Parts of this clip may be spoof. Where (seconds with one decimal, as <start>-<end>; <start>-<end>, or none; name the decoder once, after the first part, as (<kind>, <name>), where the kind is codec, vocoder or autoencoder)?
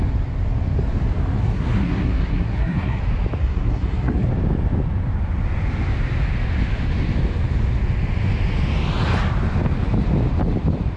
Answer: 1.4-3.0 (codec, SNAC); 3.4-4.3